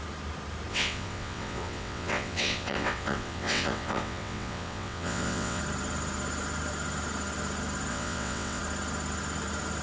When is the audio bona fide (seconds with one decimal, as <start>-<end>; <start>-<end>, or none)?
0.0-0.7; 5.6-7.9; 8.6-9.8